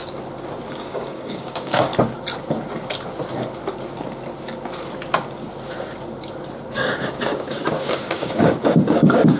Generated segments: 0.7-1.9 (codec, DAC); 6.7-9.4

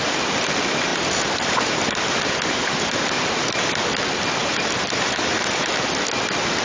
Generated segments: 0.9-3.8 (vocoder, BigVGAN v2); 4.4-5.8

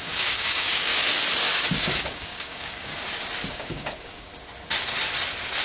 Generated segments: 0.0-0.9 (codec, DAC); 1.5-2.9; 3.5-4.3

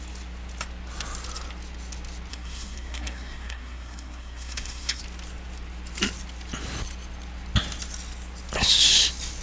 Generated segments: 2.3-5.0 (codec, SNAC)

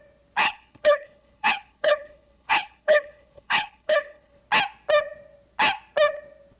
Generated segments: 0.4-4.4 (codec, HILCodec)

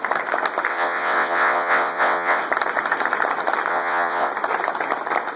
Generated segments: 0.7-2.4 (vocoder, WaveNeXt); 3.7-4.3